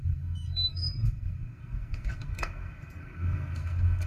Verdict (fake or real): fake